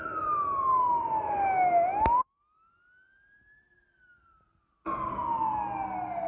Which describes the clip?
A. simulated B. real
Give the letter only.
B